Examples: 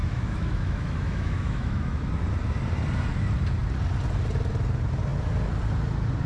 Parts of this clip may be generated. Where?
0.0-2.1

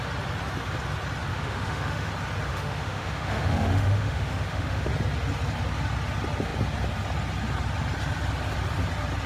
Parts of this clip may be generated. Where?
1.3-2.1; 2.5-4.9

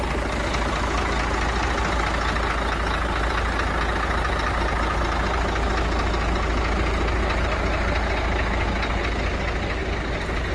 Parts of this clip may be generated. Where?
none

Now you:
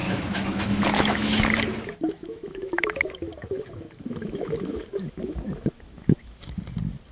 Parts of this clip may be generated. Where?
0.0-1.6; 2.2-6.5

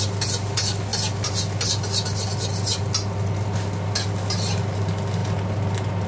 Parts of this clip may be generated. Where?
none

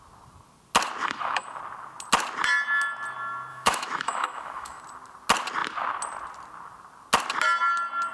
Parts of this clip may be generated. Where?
1.0-1.6; 3.5-4.8